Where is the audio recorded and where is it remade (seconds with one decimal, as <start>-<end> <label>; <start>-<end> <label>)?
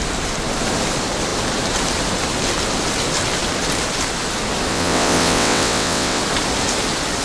0.0-4.7 recorded; 4.7-6.2 remade; 6.2-7.2 recorded